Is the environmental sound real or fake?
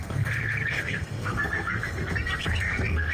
fake